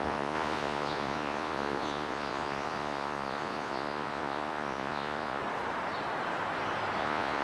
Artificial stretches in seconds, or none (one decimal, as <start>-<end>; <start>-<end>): 0.0-5.4; 7.0-7.4